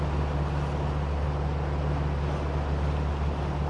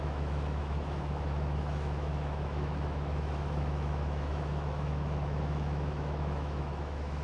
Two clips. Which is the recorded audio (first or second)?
first